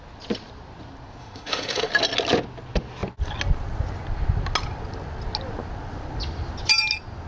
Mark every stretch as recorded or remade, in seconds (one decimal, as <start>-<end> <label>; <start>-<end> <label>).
0.0-1.2 recorded; 1.2-1.9 remade; 1.9-7.3 recorded